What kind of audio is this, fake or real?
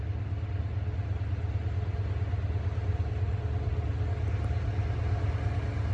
real